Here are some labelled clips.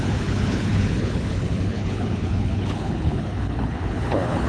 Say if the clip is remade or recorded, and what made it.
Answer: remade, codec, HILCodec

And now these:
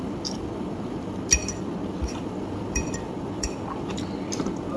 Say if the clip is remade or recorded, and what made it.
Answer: recorded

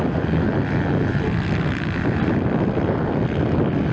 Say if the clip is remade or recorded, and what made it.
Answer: recorded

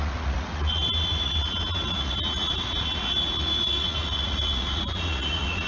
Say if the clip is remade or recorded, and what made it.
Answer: remade, vocoder, Vocos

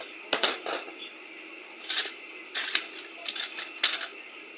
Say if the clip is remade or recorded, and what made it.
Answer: recorded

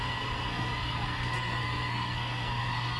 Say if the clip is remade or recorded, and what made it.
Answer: remade, codec, SNAC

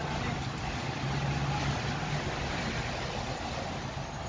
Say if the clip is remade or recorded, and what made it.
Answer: recorded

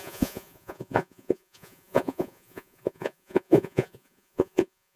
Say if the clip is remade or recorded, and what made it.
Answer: remade, vocoder, Vocos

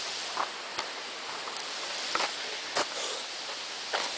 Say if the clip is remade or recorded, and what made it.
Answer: recorded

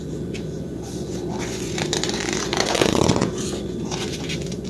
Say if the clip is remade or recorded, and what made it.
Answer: remade, vocoder, Vocos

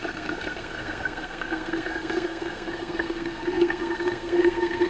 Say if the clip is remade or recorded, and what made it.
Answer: remade, codec, SNAC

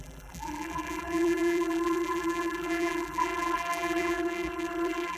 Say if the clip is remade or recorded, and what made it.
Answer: remade, vocoder, BigVGAN v2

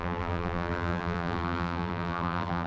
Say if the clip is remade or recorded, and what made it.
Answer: remade, vocoder, BigVGAN v2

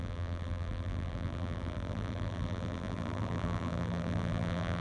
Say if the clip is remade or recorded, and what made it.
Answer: remade, vocoder, BigVGAN v2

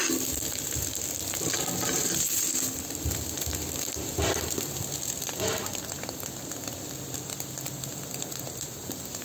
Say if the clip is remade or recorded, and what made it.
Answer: remade, vocoder, BigVGAN v2